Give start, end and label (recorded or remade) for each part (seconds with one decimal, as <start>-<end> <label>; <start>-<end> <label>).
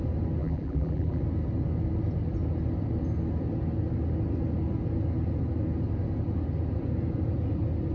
0.0-0.4 recorded; 0.4-1.2 remade; 1.2-7.9 recorded